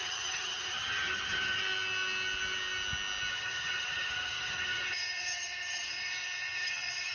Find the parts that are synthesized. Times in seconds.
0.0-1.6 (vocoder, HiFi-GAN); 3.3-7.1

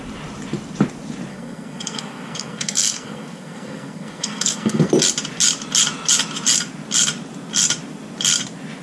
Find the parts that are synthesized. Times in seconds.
1.3-4.9 (codec, SNAC)

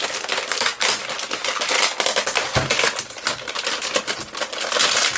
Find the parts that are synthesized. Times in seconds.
1.0-4.0 (vocoder, BigVGAN v2)

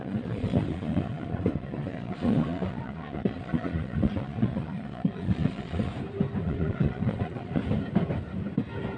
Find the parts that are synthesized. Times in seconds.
0.0-5.9 (vocoder, Vocos); 6.4-7.6

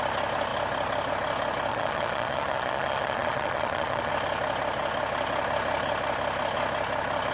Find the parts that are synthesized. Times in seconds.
1.7-4.1 (vocoder, Vocos)